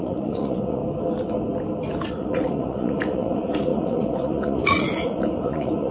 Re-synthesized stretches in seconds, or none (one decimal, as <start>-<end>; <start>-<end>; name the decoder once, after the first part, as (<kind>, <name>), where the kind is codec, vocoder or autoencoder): 0.0-0.8 (vocoder, Vocos); 2.1-5.9